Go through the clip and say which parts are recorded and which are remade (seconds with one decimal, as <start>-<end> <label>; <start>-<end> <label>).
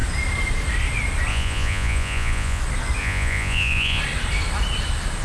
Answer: 0.0-1.3 recorded; 1.3-2.6 remade; 2.6-3.0 recorded; 3.0-4.0 remade; 4.0-5.2 recorded